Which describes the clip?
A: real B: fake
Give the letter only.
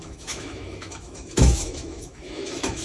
B